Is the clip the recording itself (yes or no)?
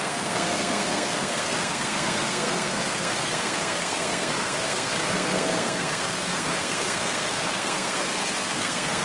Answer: no